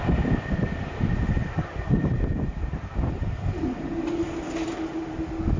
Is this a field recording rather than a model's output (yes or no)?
yes